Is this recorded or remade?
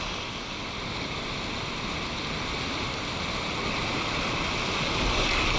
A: recorded